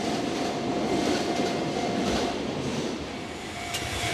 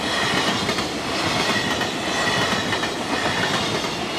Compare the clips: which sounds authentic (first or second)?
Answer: second